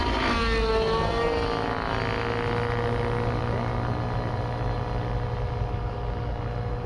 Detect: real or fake real